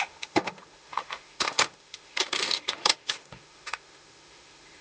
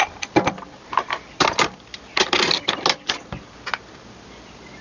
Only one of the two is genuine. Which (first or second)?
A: second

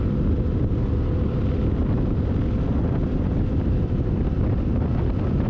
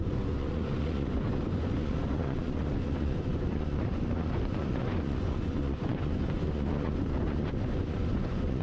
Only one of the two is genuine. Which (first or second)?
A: first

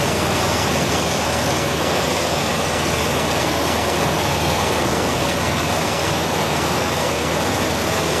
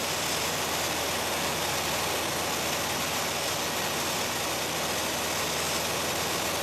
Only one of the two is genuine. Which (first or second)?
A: second